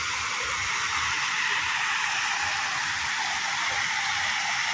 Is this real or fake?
fake